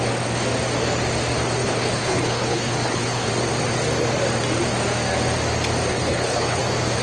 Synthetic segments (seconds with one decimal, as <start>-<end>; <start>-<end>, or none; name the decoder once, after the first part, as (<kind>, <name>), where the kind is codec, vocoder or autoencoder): 1.6-3.3 (codec, HILCodec); 5.9-6.6